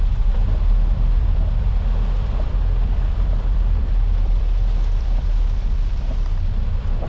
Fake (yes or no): yes